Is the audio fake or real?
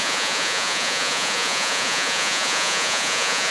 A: fake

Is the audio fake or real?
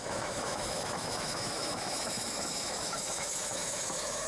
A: fake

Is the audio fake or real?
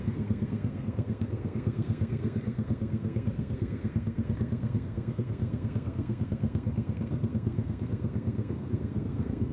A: fake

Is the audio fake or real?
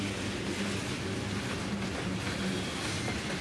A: real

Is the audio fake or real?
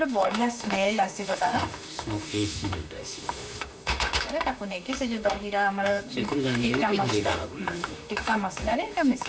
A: fake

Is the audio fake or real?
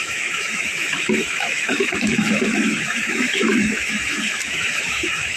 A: fake